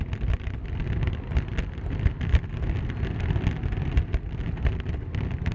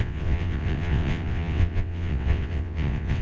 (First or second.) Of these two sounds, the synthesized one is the second